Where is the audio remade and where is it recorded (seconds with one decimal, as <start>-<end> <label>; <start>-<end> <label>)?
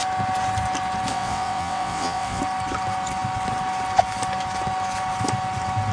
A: 0.0-1.1 recorded; 1.1-2.4 remade; 2.4-5.9 recorded